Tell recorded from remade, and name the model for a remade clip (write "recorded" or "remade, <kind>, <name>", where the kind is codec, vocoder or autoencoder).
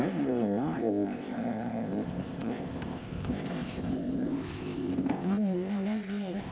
remade, codec, ZipCodec